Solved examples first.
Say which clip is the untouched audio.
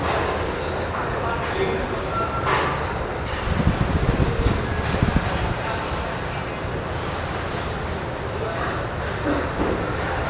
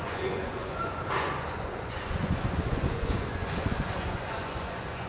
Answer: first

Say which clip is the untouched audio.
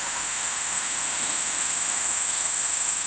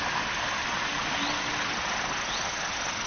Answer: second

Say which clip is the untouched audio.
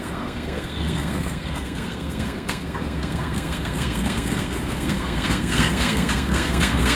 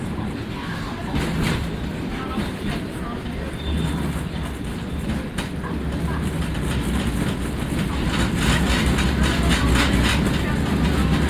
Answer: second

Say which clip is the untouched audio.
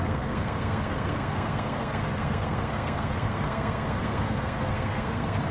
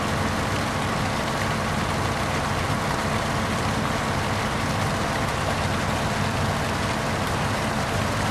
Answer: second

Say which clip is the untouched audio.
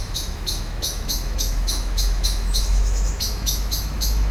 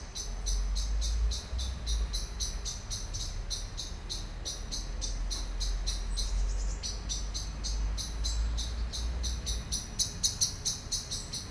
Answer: second